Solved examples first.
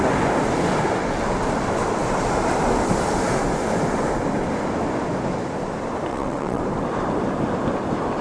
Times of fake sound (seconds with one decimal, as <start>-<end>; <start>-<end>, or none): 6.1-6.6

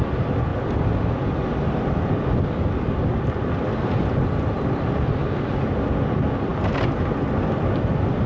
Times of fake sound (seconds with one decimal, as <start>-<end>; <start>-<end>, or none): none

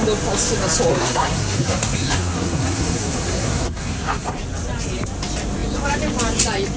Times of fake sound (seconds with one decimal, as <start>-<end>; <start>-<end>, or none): 0.9-4.4